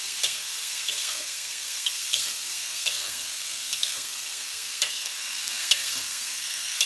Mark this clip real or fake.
fake